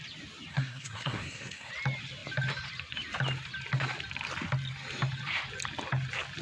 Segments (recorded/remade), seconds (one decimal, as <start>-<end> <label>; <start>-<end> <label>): 0.0-0.5 recorded; 0.5-1.7 remade; 1.7-6.4 recorded